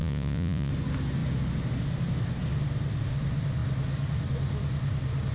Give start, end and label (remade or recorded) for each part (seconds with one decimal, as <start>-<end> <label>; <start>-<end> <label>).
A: 0.0-0.7 remade; 0.7-5.3 recorded